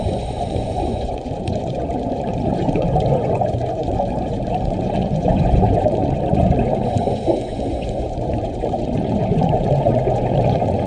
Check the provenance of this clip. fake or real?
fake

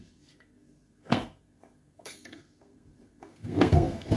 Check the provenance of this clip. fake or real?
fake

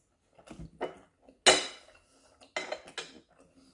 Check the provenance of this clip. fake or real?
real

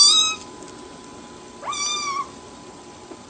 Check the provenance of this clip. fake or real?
fake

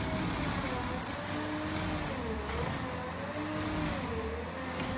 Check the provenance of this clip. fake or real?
real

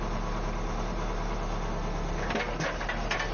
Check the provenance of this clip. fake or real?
real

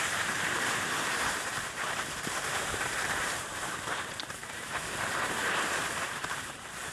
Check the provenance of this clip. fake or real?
fake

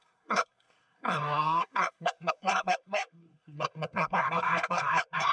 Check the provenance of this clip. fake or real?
fake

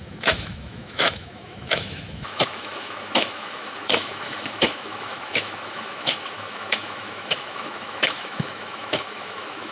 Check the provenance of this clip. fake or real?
fake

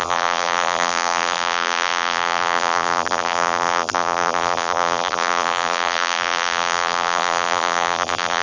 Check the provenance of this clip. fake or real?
fake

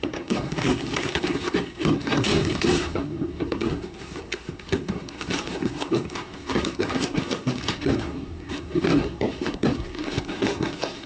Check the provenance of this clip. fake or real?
fake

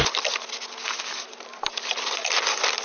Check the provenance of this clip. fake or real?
fake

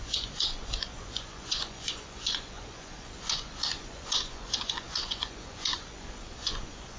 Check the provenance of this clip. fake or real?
fake